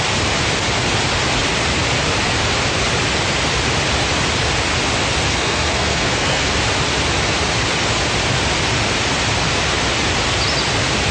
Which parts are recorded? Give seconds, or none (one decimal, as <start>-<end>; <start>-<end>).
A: 0.0-5.3; 6.5-11.1